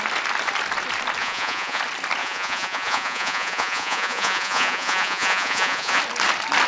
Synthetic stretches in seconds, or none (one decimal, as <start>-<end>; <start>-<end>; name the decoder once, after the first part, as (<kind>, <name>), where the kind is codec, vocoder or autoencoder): 1.2-1.8 (vocoder, Vocos); 2.2-6.0